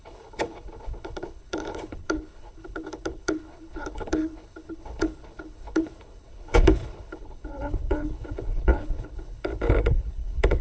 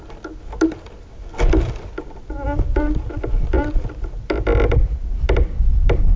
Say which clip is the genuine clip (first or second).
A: second